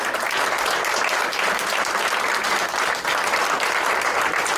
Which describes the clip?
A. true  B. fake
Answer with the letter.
A